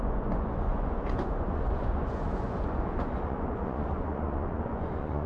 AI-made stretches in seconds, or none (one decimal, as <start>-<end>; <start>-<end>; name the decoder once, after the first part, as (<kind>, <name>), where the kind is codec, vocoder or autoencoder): 0.0-5.3 (vocoder, Vocos)